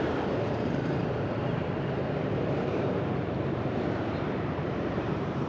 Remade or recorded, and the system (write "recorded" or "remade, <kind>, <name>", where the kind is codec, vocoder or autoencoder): remade, vocoder, BigVGAN v2